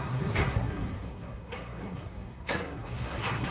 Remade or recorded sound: remade